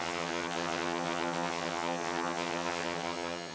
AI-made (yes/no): yes